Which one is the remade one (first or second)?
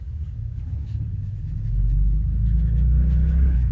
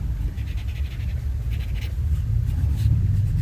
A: first